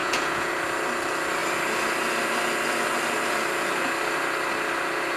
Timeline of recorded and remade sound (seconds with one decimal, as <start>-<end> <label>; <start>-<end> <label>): 0.0-0.5 remade; 0.5-5.2 recorded